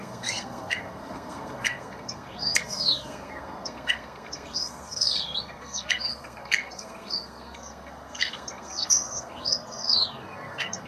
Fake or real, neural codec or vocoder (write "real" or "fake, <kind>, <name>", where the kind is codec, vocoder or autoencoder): fake, codec, SNAC